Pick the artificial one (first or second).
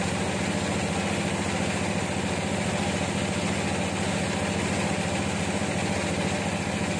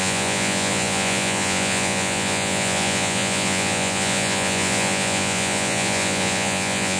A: second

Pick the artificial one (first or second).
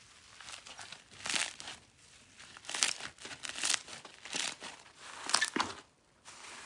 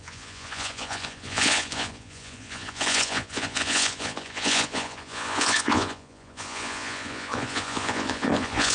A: second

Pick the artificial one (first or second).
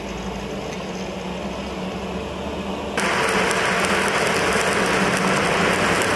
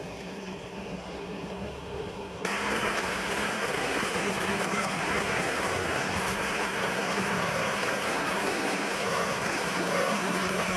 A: second